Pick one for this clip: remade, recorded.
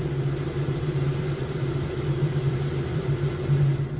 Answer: remade